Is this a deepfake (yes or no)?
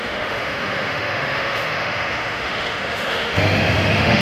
yes